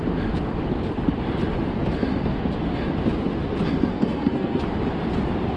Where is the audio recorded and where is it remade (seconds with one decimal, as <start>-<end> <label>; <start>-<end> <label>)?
0.0-3.9 recorded; 3.9-4.6 remade; 4.6-5.6 recorded